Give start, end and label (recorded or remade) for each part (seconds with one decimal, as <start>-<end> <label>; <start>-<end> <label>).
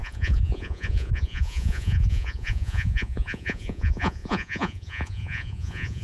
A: 0.0-6.0 remade